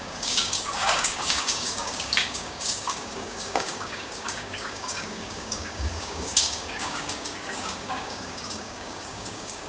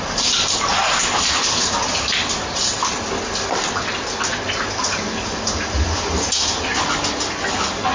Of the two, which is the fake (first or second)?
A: first